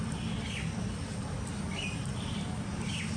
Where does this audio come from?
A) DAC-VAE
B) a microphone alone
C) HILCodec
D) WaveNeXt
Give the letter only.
B